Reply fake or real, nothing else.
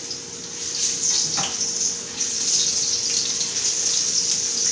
real